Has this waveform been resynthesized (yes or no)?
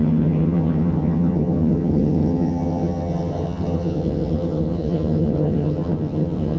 yes